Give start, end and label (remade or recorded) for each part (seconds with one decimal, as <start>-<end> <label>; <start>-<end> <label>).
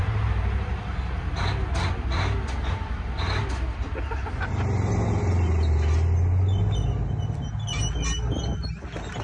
0.0-0.7 remade; 0.7-9.2 recorded